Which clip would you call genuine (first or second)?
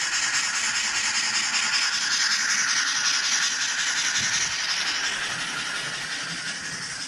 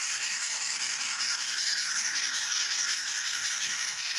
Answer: first